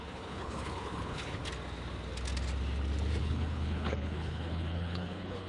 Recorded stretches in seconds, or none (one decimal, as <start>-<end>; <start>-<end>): 1.4-3.2